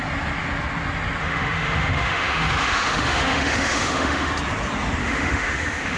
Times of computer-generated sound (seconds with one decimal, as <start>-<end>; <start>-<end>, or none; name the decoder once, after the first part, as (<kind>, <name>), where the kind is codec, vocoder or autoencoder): 1.2-4.3 (autoencoder, DAC-VAE); 5.0-6.0